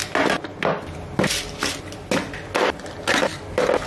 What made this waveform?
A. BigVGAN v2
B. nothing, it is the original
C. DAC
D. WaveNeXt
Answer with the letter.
B